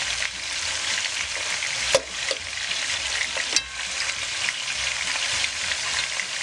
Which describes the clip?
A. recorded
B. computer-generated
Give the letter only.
A